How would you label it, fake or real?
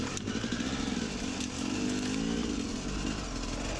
real